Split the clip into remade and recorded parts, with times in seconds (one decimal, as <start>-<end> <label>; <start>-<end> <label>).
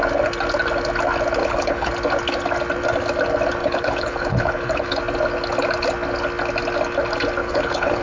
0.0-1.4 recorded; 1.4-1.9 remade; 1.9-3.6 recorded; 3.6-5.0 remade; 5.0-7.4 recorded; 7.4-8.0 remade